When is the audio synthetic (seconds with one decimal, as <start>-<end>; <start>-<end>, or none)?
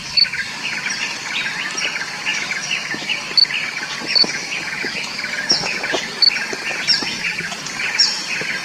2.3-3.2; 4.2-5.8